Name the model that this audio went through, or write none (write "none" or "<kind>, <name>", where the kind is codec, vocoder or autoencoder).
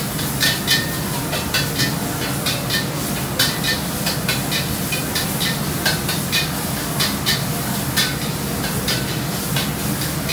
none